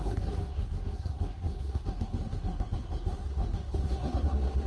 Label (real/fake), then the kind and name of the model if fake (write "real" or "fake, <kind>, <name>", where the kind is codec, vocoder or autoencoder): fake, codec, SNAC